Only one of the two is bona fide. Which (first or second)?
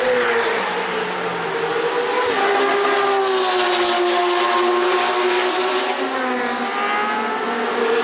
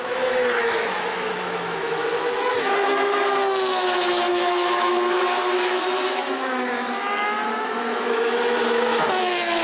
first